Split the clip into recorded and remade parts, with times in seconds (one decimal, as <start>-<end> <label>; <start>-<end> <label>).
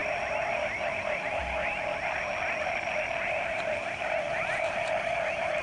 0.0-5.6 recorded